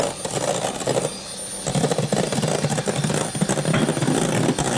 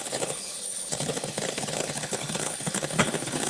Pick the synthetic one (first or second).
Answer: second